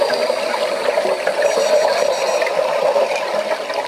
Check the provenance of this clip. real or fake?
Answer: real